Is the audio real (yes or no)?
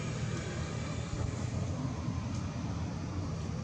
yes